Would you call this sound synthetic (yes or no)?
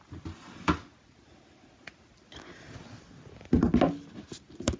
no